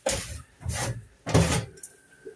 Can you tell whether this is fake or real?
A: real